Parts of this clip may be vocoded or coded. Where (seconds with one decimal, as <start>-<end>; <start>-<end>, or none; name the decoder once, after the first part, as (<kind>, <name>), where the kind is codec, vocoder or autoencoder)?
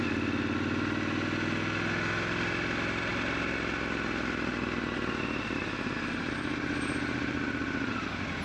none